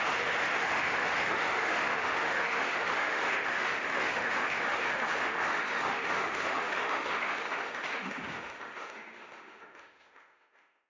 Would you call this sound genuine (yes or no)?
no